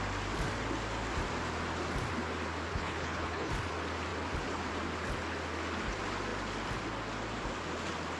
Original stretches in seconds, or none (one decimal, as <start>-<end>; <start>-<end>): 0.0-2.7; 3.5-8.2